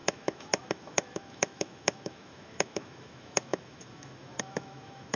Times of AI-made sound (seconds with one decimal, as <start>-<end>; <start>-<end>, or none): 0.0-5.2